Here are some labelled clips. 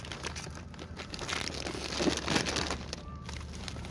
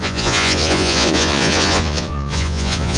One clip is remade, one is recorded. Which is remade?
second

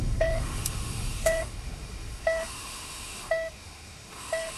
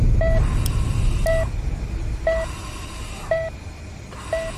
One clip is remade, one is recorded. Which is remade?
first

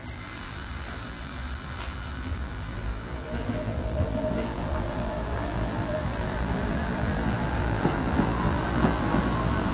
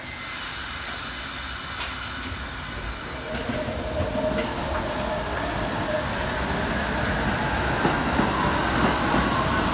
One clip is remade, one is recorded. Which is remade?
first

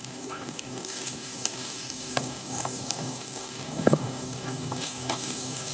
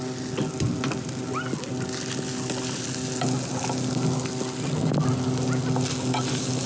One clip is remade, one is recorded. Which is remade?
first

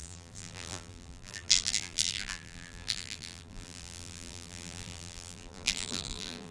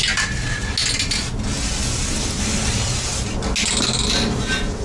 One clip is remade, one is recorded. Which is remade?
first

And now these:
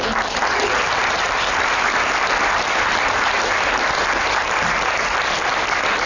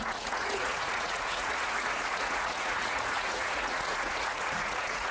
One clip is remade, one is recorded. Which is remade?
second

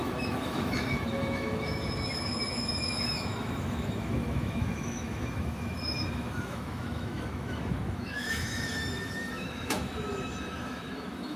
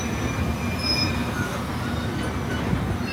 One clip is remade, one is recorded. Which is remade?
first